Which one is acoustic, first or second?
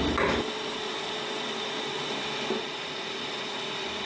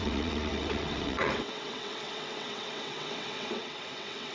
first